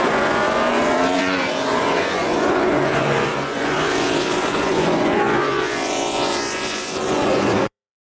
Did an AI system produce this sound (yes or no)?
yes